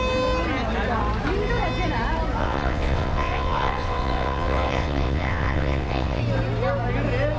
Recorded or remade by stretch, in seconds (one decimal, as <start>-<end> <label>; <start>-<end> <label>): 0.0-2.4 recorded; 2.4-6.2 remade; 6.2-7.4 recorded